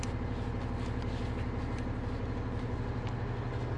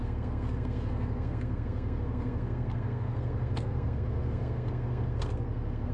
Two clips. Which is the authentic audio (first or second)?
first